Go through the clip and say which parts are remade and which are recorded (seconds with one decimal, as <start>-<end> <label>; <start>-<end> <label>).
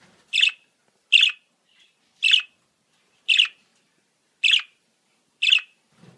0.0-0.8 remade; 0.8-2.5 recorded; 2.5-3.7 remade; 3.7-4.8 recorded; 4.8-6.2 remade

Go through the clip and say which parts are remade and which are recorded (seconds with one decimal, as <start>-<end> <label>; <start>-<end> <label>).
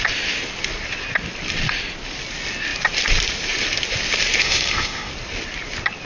0.0-4.4 recorded; 4.4-5.1 remade; 5.1-6.0 recorded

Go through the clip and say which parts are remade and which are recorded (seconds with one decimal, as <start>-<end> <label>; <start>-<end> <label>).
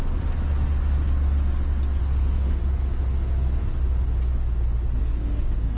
0.0-2.0 recorded; 2.0-2.6 remade; 2.6-5.0 recorded; 5.0-5.8 remade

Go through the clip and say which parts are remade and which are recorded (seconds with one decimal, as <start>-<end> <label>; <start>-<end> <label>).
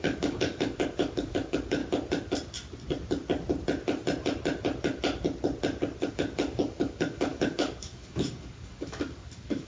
0.0-1.8 remade; 1.8-6.1 recorded; 6.1-9.7 remade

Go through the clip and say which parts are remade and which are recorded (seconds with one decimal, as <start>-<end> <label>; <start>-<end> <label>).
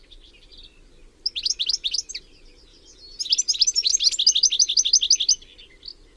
0.0-6.2 recorded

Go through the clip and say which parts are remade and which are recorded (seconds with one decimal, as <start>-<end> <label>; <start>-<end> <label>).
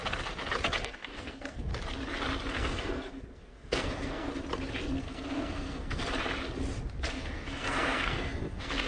0.0-0.8 recorded; 0.8-1.7 remade; 1.7-2.5 recorded; 2.5-4.3 remade; 4.3-5.0 recorded; 5.0-6.0 remade; 6.0-7.1 recorded; 7.1-8.9 remade